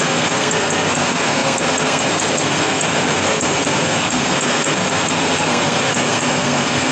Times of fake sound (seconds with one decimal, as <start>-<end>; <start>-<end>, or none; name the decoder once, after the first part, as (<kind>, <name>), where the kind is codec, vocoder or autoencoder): 0.0-6.9 (codec, SNAC)